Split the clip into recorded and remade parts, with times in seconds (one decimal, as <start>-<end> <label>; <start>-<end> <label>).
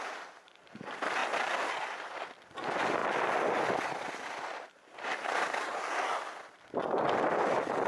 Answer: 0.0-7.9 recorded